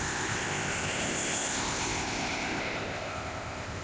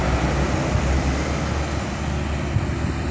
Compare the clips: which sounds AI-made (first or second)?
first